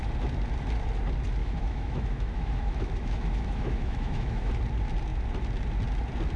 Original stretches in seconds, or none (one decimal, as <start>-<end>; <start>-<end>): 0.0-1.4; 4.5-6.4